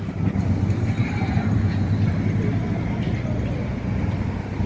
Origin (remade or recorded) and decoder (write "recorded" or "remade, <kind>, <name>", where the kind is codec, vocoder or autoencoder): recorded